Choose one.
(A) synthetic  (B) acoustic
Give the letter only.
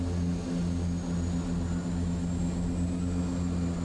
B